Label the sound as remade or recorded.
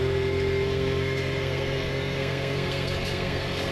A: remade